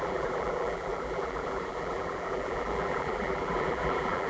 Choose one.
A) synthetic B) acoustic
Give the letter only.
A